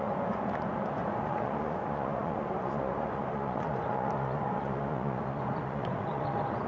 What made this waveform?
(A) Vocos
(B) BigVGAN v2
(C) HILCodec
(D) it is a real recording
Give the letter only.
A